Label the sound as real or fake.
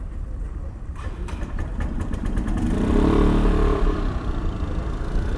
fake